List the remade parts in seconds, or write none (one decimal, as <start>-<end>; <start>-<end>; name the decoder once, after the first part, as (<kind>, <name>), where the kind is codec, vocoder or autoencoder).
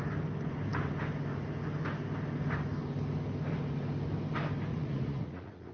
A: 4.7-5.7 (vocoder, Vocos)